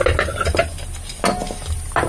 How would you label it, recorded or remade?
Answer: recorded